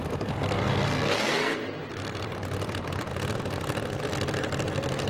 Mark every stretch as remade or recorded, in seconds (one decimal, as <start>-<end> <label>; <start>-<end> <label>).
0.0-1.8 remade; 1.8-5.1 recorded